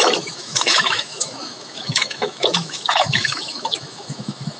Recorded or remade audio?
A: remade